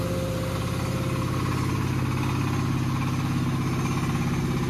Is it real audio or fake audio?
real